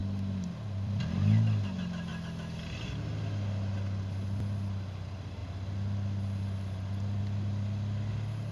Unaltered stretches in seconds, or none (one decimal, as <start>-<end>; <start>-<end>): 1.0-8.5